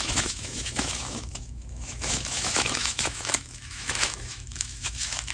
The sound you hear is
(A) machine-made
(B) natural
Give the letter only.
A